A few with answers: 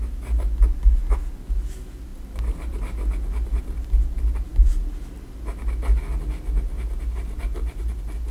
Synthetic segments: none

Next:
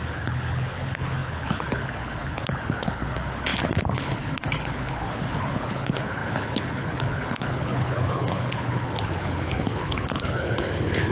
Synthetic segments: 0.0-11.1 (codec, HILCodec)

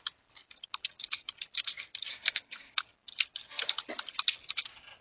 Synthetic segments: 2.1-2.7 (codec, SNAC)

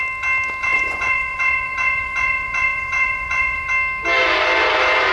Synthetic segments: 0.6-3.7 (vocoder, Vocos)

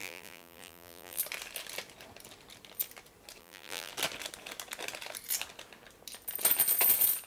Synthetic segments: 0.0-1.2 (vocoder, BigVGAN v2); 3.4-3.9